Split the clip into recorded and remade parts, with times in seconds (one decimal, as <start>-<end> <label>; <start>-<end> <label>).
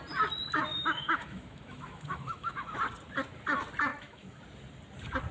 0.0-0.7 recorded; 0.7-2.8 remade; 2.8-3.9 recorded; 3.9-4.4 remade; 4.4-5.3 recorded